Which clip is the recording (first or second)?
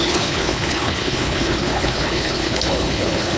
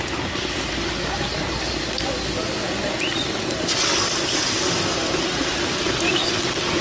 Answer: second